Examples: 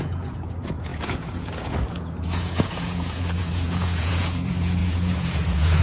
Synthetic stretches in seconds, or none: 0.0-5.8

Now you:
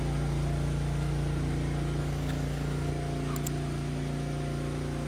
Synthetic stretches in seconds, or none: 2.0-2.9

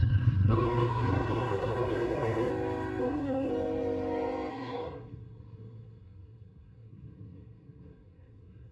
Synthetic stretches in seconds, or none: 0.0-2.5; 3.0-3.5; 4.5-8.7

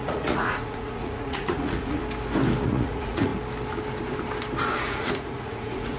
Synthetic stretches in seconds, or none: 0.0-2.0; 2.6-3.3; 4.8-6.0

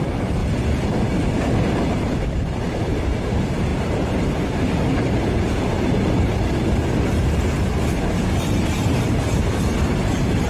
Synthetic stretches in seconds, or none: 0.0-0.4; 1.8-10.5

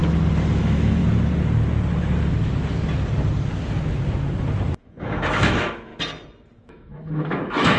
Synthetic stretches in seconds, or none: 0.6-1.0; 4.8-5.9; 6.6-7.8